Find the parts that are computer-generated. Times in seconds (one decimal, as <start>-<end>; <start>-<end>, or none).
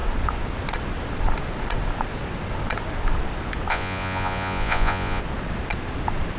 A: 3.7-5.2